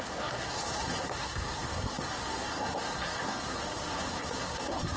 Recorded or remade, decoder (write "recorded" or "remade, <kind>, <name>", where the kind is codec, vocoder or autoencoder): remade, codec, SNAC